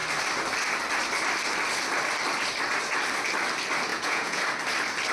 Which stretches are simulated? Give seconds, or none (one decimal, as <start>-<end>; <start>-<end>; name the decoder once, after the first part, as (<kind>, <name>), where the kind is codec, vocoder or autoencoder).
3.9-4.4 (vocoder, Vocos)